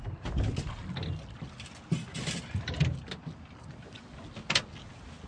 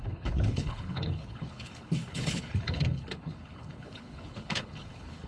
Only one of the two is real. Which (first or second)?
first